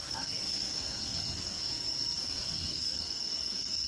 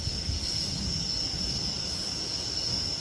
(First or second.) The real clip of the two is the second